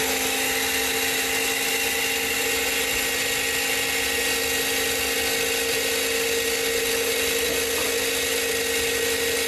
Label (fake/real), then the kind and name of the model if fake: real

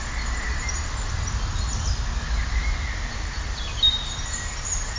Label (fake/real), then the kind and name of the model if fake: real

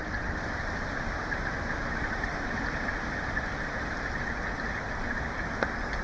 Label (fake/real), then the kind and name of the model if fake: real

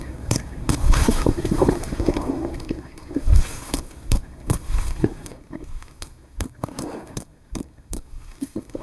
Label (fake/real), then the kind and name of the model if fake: fake, codec, SNAC